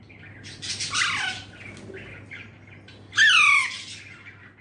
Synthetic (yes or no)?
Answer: no